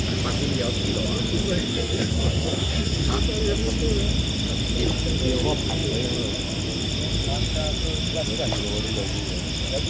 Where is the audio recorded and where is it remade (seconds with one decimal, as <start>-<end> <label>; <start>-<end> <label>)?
0.0-1.7 recorded; 1.7-3.1 remade; 3.1-9.9 recorded